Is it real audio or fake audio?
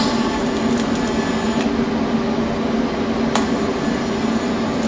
real